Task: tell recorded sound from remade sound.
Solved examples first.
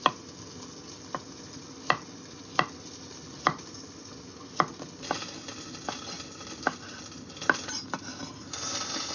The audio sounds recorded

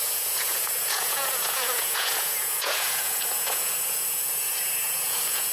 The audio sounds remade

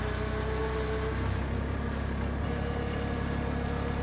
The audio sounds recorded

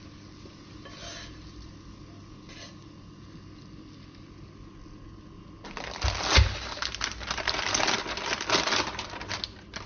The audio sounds recorded